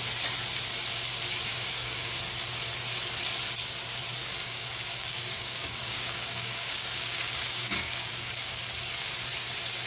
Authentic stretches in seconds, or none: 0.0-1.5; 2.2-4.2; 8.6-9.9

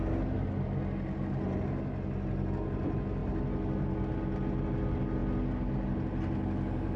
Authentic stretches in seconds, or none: 0.0-7.0

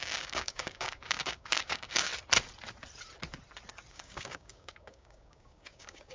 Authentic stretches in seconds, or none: 2.1-3.9

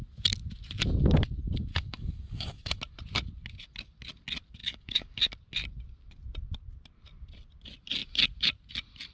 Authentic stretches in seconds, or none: 0.0-1.7; 2.8-4.6; 5.2-9.1

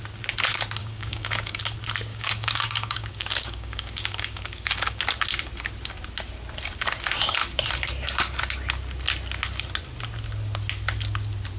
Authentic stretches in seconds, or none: 0.0-0.8; 1.6-2.1; 5.0-11.6